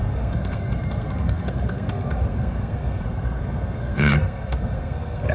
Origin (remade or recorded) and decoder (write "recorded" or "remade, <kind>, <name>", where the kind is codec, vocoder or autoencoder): remade, codec, SNAC